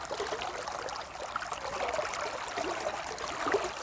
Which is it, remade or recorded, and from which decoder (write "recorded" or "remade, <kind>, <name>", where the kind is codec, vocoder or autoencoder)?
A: recorded